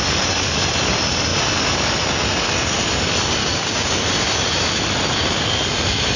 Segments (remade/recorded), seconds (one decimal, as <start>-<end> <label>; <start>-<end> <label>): 0.0-3.4 recorded; 3.4-3.9 remade; 3.9-6.2 recorded